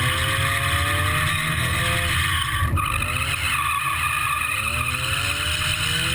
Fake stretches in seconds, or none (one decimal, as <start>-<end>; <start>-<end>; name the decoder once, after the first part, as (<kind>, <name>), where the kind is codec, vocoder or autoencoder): 1.3-1.8 (codec, SNAC)